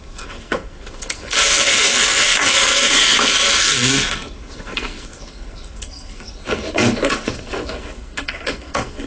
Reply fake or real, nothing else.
fake